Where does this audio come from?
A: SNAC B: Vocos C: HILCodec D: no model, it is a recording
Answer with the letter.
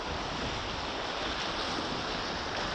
D